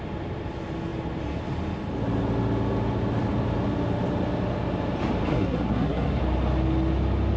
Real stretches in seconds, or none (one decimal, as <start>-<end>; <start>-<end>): 0.0-5.3; 6.2-7.4